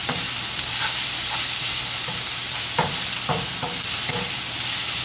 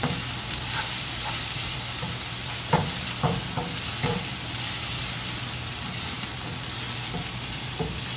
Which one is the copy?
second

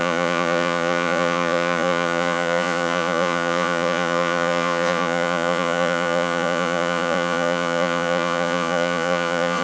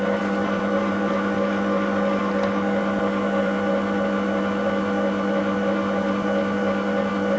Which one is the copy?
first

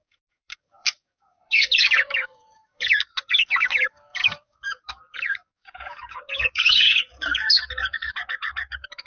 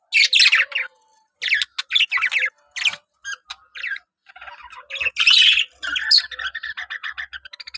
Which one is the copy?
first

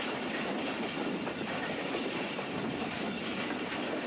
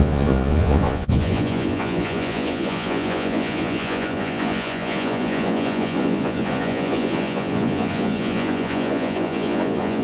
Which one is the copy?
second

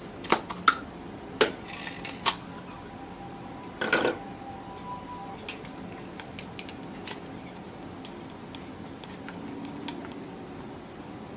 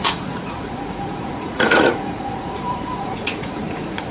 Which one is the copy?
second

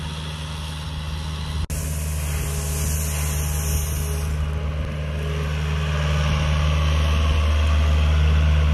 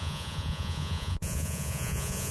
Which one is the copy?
second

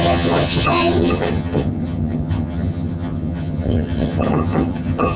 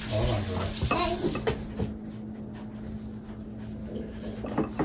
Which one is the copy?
first